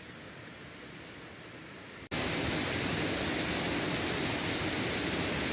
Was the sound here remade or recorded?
recorded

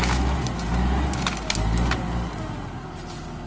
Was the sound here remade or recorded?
recorded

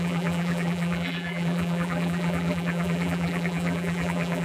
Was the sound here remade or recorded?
remade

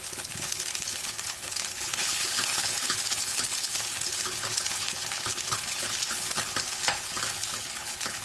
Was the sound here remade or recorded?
remade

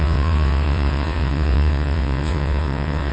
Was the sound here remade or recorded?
remade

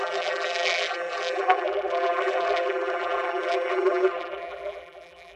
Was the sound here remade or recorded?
remade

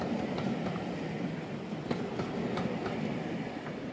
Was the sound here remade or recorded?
recorded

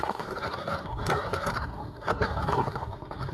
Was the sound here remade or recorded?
remade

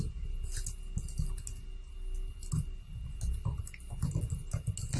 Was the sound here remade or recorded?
recorded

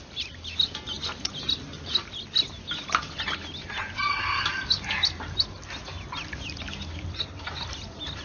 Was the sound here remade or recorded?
recorded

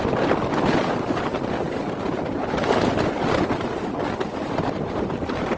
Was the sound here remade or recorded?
recorded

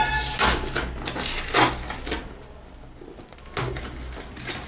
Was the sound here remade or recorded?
recorded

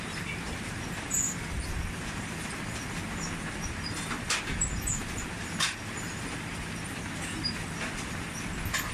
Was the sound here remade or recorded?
recorded